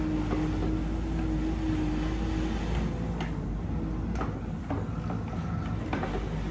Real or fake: real